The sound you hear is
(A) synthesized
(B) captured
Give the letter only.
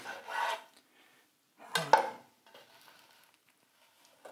B